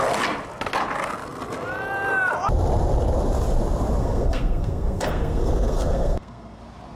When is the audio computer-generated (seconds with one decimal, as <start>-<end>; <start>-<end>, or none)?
4.0-6.6